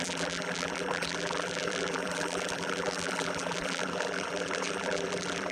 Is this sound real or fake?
fake